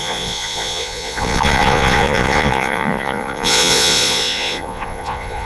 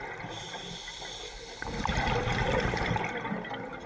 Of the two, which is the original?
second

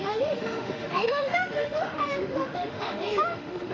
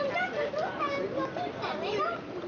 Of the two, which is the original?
second